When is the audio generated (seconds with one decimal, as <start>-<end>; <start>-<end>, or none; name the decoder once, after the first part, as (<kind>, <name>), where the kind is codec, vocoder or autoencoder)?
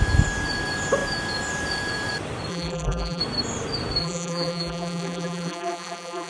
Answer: 2.5-3.2 (vocoder, BigVGAN v2); 4.0-6.3